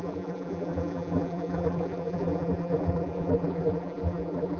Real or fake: fake